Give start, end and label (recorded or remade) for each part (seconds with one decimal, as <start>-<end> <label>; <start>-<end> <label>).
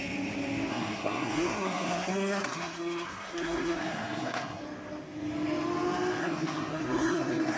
0.0-0.7 recorded; 0.7-4.6 remade; 4.6-6.2 recorded; 6.2-7.6 remade